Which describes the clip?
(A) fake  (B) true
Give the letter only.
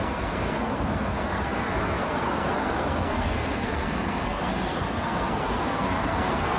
A